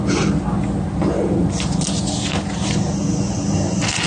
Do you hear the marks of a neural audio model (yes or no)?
no